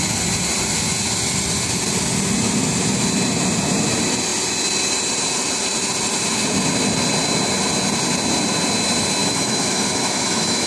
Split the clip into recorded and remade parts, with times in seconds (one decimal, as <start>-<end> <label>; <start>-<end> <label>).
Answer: 0.0-9.2 recorded; 9.2-10.7 remade